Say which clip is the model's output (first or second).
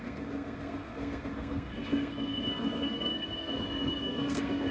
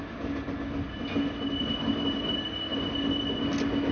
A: first